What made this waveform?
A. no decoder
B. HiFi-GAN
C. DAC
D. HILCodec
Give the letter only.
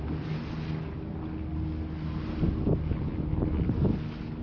A